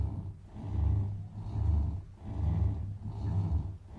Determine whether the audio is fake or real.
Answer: real